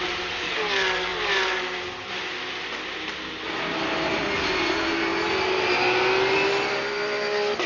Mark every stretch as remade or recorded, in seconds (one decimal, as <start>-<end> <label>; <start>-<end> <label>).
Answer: 0.0-7.7 recorded